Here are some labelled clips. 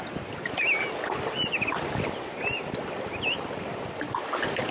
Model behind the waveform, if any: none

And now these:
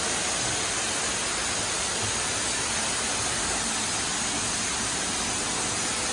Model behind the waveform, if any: none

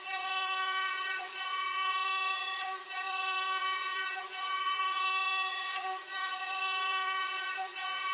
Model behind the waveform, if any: vocoder, Vocos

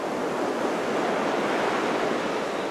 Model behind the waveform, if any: none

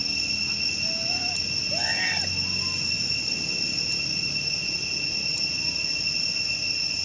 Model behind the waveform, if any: none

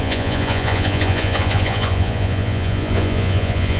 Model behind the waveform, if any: vocoder, Vocos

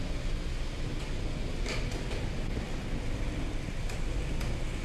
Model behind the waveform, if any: none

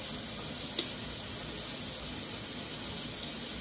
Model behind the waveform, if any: none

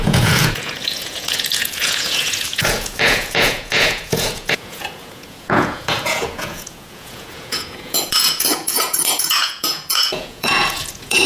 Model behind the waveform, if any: vocoder, Vocos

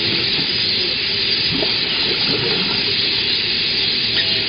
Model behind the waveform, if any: none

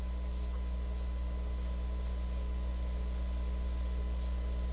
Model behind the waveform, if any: none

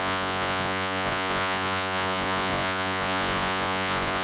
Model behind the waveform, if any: vocoder, Vocos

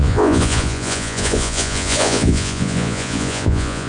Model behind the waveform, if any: vocoder, Vocos